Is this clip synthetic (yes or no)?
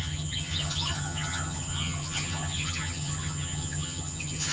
yes